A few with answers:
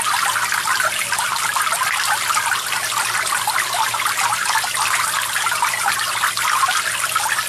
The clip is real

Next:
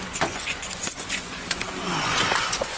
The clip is fake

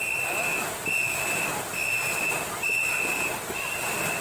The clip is real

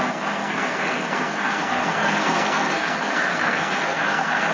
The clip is fake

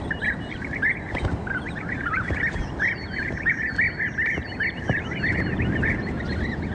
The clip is real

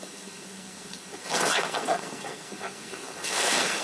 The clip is fake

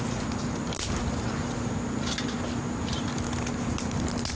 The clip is real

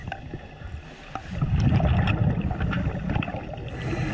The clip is real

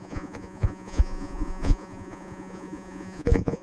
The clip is fake